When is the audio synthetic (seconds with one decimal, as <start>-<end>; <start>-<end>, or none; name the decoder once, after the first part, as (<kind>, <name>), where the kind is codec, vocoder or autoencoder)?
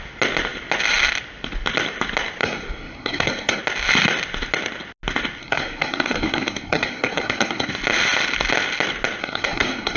2.4-3.6 (codec, SNAC); 5.4-7.7; 9.2-10.0